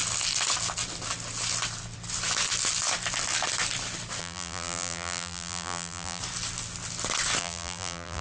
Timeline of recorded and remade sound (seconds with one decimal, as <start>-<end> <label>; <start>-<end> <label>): 0.0-4.2 recorded; 4.2-6.2 remade; 6.2-7.4 recorded; 7.4-8.2 remade

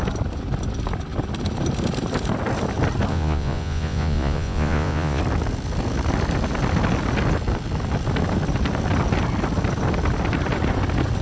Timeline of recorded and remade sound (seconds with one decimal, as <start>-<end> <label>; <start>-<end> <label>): 0.0-3.1 recorded; 3.1-5.2 remade; 5.2-11.2 recorded

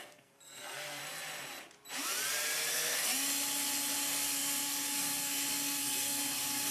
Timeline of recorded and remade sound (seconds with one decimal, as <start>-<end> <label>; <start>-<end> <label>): 0.0-1.0 remade; 1.0-2.7 recorded; 2.7-3.1 remade; 3.1-4.0 recorded; 4.0-6.7 remade

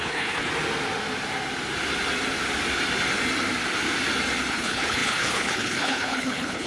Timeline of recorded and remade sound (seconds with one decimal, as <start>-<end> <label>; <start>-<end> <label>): 0.0-0.5 remade; 0.5-4.5 recorded; 4.5-6.7 remade